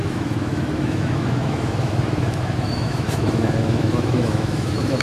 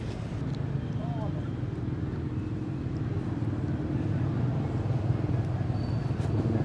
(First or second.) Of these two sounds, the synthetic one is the first